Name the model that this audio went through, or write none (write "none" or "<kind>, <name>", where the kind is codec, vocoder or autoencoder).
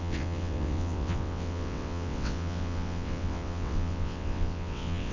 vocoder, WaveNeXt